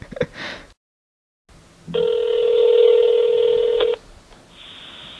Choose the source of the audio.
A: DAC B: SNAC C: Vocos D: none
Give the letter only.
D